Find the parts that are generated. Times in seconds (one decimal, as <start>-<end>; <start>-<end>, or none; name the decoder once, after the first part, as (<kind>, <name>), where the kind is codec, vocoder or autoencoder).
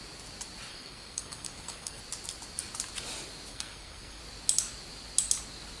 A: 0.7-2.0 (codec, SNAC); 3.5-4.2